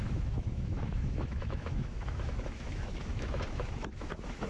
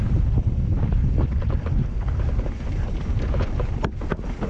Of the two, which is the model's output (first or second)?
first